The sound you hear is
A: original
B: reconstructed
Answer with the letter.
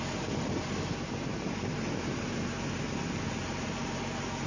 A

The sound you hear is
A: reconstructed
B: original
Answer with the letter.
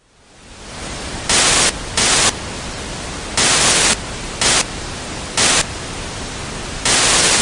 B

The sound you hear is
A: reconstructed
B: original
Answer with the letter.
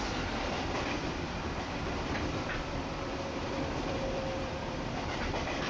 A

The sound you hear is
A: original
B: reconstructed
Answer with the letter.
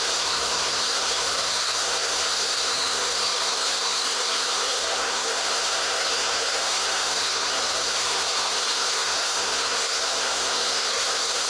B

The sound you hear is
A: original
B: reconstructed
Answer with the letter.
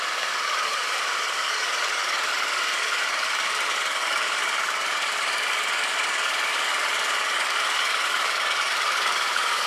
B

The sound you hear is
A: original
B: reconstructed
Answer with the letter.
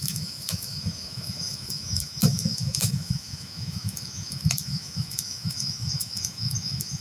B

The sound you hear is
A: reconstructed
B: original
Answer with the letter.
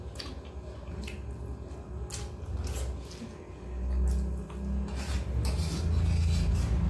B